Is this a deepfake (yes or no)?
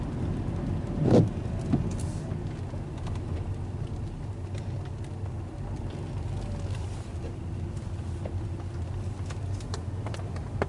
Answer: no